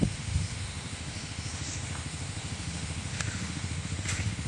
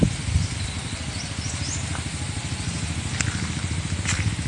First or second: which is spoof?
first